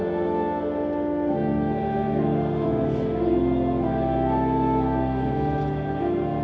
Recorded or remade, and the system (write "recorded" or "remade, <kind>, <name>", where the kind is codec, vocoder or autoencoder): recorded